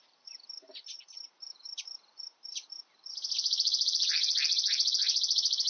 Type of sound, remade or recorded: remade